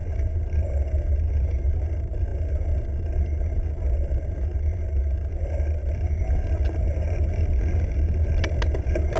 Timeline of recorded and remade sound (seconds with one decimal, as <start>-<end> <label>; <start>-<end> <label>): 0.0-0.8 remade; 0.8-9.2 recorded